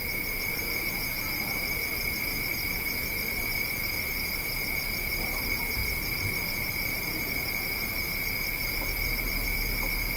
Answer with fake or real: real